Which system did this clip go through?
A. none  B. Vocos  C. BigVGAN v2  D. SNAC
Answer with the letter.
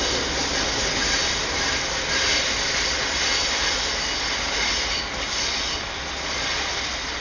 A